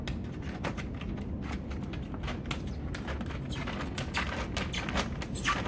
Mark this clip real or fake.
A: real